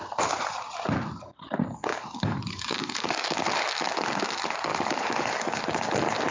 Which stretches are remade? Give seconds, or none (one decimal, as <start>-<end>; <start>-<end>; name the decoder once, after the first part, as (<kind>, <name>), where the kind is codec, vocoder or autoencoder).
1.9-3.4 (codec, DAC); 4.7-5.6